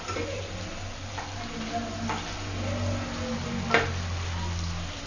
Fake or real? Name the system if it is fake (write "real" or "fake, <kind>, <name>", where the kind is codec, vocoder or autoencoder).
real